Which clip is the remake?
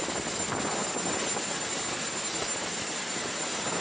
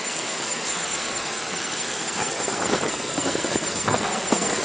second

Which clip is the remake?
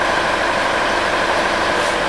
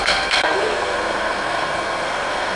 second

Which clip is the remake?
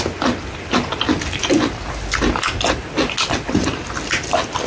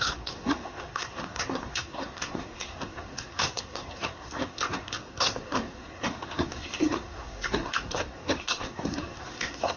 second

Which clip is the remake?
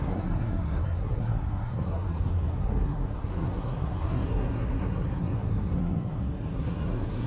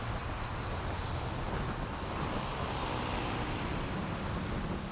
first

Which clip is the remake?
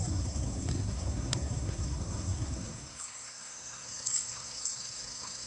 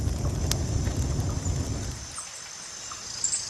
first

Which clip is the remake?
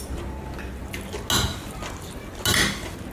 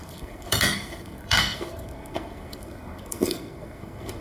second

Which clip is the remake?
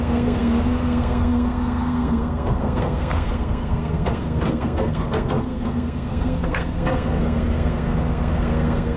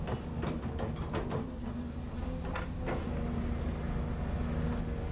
first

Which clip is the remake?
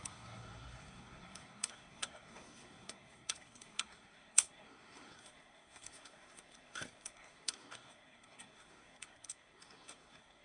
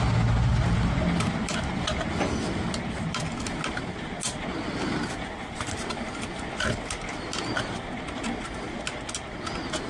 first